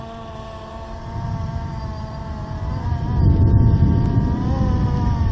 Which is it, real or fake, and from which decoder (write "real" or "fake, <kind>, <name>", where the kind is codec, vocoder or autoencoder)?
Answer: real